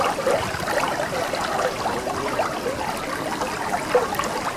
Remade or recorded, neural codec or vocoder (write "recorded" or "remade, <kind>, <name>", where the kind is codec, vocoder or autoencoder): recorded